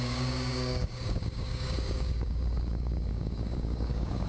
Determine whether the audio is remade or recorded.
remade